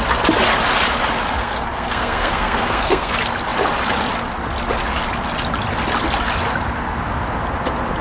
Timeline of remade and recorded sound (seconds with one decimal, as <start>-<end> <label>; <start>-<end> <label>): 0.0-1.4 recorded; 1.4-3.1 remade; 3.1-8.0 recorded